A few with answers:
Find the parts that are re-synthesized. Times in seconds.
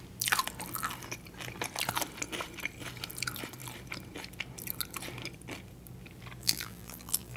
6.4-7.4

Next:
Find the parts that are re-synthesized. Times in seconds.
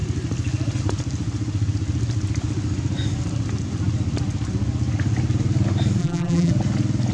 6.0-6.5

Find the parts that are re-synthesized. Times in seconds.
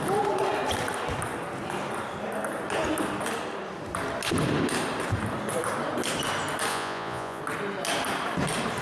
6.7-7.4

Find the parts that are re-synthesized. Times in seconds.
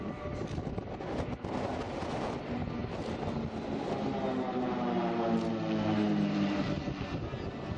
none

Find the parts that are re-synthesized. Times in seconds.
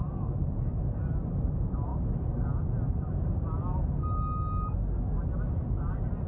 none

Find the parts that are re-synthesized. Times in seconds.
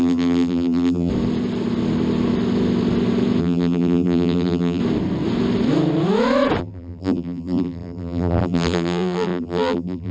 0.0-1.1; 3.4-4.8; 6.6-10.1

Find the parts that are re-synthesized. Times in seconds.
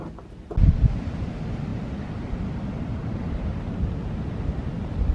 none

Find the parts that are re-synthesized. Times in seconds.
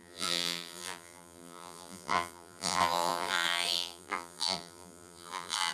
0.0-5.7